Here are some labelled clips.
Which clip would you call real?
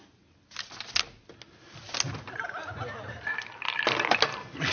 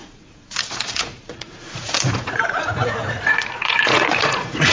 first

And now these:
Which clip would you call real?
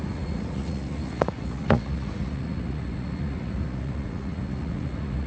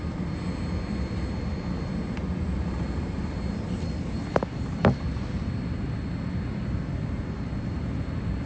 second